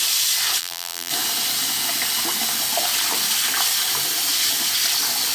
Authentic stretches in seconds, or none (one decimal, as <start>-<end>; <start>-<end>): 0.0-0.6; 1.1-5.3